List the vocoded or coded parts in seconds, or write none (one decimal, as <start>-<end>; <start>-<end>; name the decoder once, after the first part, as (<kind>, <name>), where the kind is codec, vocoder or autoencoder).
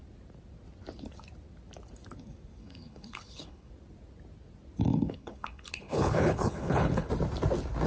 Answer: 2.6-3.7 (codec, HILCodec); 4.9-7.1